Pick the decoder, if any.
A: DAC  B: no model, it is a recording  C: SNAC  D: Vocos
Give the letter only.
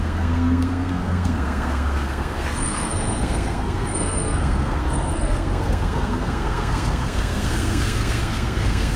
C